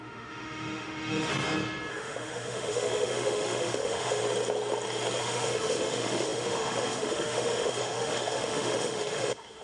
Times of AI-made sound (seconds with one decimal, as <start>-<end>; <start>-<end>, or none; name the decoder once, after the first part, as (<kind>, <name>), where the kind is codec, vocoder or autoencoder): 0.0-1.3 (autoencoder, DAC-VAE); 1.9-4.2; 5.2-9.6